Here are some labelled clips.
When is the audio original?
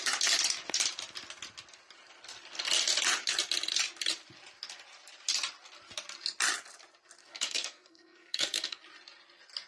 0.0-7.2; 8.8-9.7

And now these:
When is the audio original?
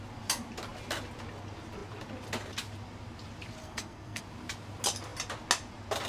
0.0-3.6; 4.2-6.1